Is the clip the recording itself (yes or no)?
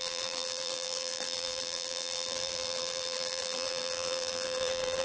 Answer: no